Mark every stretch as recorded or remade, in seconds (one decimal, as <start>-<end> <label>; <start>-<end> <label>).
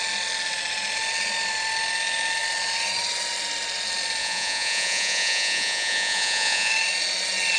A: 0.0-4.2 recorded; 4.2-6.7 remade; 6.7-7.6 recorded